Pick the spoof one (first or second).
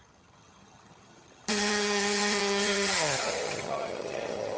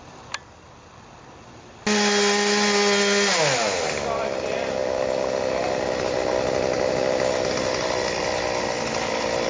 first